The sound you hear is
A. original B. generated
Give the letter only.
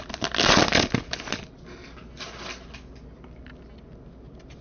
A